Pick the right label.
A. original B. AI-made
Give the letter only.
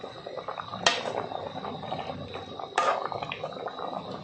A